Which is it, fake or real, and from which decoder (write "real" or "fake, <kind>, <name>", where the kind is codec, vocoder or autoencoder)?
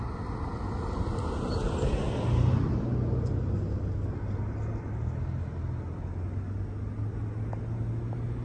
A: real